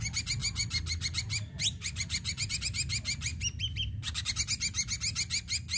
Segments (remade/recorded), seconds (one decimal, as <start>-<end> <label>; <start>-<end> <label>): 0.0-5.8 recorded